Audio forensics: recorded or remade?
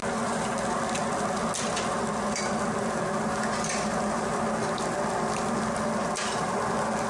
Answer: recorded